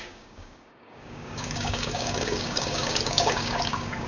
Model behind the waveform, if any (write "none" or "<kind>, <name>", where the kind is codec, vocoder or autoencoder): codec, DAC